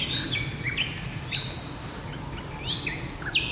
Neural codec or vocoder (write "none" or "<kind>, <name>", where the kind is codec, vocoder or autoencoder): none